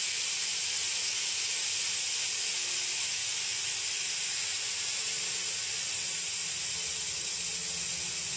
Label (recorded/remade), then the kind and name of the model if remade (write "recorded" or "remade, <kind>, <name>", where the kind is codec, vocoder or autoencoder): recorded